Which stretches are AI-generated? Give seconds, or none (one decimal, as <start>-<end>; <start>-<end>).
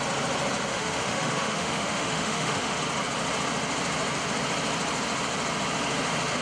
0.7-2.8